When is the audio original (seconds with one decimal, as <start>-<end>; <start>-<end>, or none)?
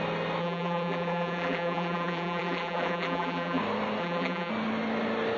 0.0-0.4; 3.6-4.0; 4.5-5.4